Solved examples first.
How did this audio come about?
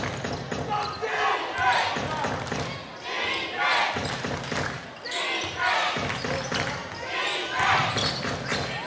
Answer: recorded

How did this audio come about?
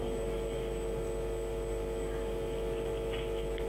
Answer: recorded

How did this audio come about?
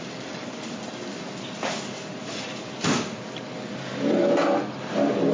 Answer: remade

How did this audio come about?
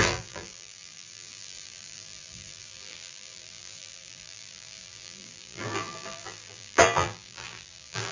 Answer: remade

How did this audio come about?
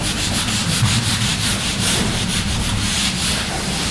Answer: remade